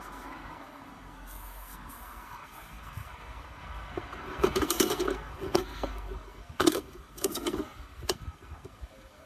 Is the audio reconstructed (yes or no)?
yes